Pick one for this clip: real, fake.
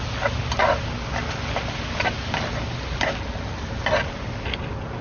real